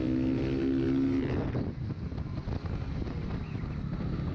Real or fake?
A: real